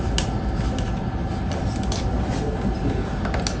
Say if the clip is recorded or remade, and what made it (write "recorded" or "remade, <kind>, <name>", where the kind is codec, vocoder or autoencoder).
recorded